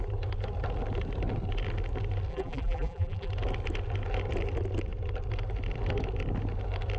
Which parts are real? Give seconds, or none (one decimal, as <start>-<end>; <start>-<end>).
0.0-2.3; 3.3-7.0